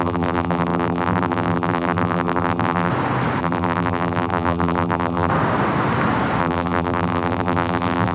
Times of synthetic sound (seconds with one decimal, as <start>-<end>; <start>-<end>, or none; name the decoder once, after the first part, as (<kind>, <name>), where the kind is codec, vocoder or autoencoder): 0.0-2.9 (vocoder, BigVGAN v2); 3.4-5.3; 6.4-8.1

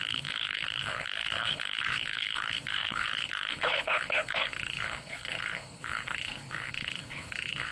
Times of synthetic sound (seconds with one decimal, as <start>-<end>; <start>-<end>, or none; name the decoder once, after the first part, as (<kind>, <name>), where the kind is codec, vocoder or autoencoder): 0.0-7.7 (codec, HILCodec)

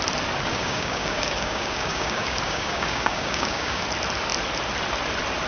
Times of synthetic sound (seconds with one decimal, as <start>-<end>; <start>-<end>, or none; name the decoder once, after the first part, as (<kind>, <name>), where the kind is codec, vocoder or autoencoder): 0.5-3.8 (codec, DAC)

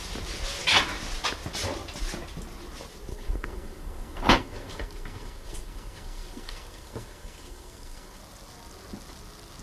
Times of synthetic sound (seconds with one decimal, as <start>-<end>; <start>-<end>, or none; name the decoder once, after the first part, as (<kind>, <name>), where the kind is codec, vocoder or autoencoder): 3.1-8.2 (codec, SNAC)

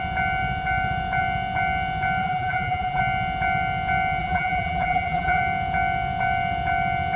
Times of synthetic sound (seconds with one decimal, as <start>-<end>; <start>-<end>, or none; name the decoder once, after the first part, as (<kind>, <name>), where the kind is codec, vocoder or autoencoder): 2.2-3.0 (vocoder, BigVGAN v2); 4.2-5.4

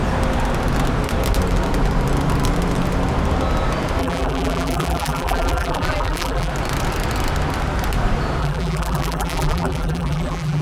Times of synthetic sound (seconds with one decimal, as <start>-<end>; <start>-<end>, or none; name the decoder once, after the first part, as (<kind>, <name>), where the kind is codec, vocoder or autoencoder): 4.0-6.5 (vocoder, BigVGAN v2); 8.4-10.6

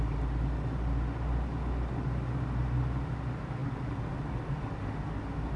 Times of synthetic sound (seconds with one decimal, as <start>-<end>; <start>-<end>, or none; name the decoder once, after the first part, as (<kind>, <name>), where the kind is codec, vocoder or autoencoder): none

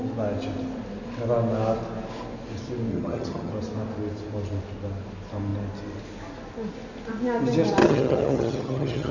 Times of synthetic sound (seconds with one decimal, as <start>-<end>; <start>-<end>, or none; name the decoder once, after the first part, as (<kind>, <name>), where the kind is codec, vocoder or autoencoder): 2.9-3.5 (vocoder, HiFi-GAN); 7.8-9.1